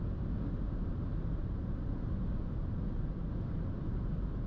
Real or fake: real